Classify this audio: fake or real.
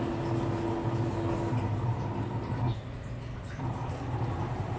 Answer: real